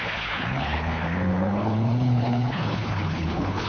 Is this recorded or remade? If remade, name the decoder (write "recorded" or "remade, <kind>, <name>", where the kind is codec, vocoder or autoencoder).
remade, codec, HILCodec